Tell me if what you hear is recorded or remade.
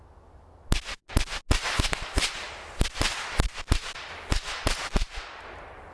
recorded